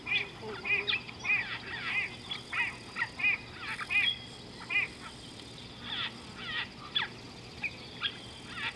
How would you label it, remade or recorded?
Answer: recorded